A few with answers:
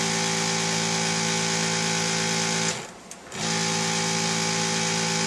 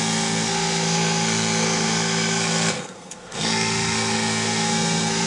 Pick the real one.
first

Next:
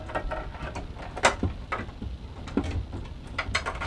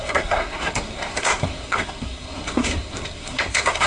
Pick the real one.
first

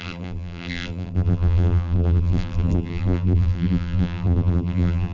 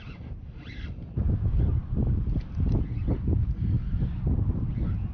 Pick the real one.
second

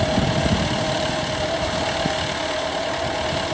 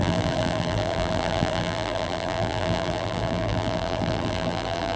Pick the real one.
first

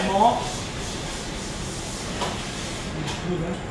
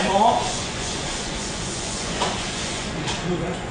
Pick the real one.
first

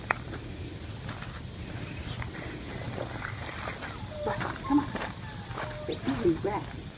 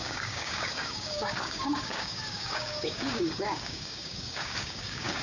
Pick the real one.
first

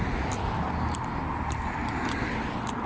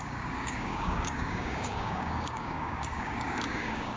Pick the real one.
first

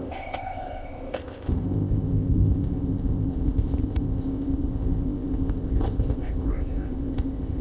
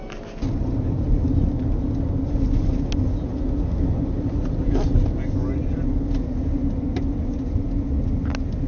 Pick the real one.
second